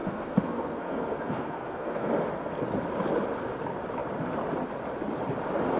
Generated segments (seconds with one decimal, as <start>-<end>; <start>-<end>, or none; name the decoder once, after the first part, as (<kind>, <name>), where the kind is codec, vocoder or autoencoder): 0.0-2.1 (codec, SNAC)